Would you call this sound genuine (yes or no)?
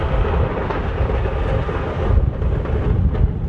yes